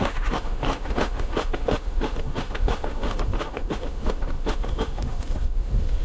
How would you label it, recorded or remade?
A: remade